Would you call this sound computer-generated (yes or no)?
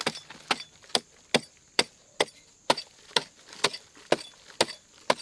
no